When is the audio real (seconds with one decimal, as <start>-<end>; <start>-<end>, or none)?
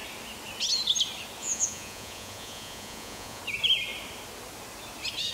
0.0-1.4; 3.4-5.3